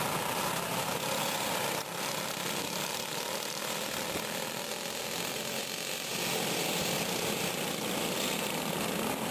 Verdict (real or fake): real